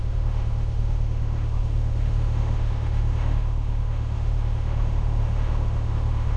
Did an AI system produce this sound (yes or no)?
yes